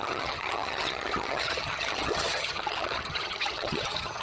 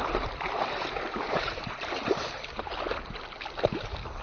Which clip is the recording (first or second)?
second